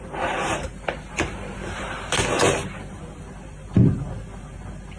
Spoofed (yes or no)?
no